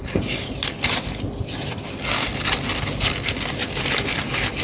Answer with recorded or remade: recorded